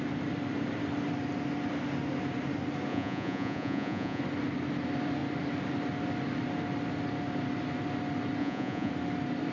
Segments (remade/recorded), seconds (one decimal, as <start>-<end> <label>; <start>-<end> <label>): 0.0-2.9 recorded; 2.9-4.2 remade; 4.2-8.4 recorded; 8.4-8.9 remade; 8.9-9.5 recorded